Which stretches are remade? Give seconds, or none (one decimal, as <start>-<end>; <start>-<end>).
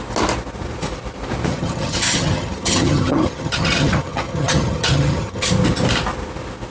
1.5-5.5